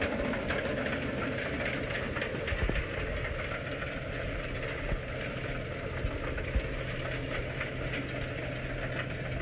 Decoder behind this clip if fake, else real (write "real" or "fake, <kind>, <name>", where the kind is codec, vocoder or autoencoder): real